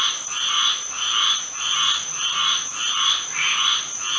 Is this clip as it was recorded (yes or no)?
yes